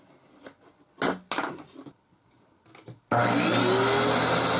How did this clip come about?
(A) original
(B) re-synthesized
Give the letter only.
A